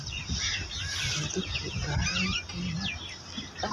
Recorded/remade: recorded